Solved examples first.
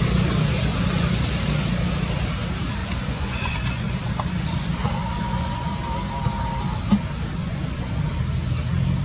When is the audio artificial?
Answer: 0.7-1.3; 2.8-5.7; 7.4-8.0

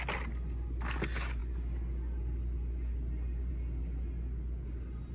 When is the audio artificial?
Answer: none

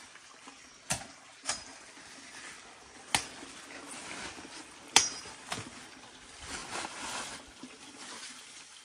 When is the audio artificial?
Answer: none

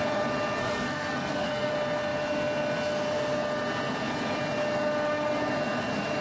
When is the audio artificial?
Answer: 0.6-1.7